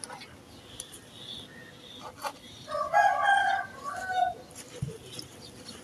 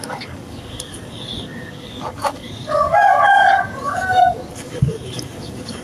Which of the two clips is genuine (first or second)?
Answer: first